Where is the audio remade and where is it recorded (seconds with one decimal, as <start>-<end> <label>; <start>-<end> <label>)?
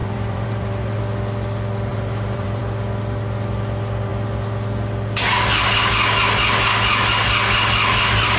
0.0-1.0 remade; 1.0-1.9 recorded; 1.9-2.6 remade; 2.6-8.4 recorded